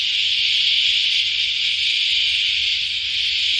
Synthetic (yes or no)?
no